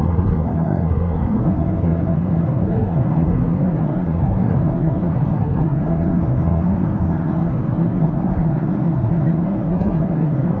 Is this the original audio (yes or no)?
no